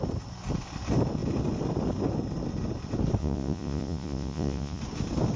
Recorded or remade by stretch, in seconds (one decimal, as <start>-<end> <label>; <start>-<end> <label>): 0.0-3.2 recorded; 3.2-4.8 remade; 4.8-5.4 recorded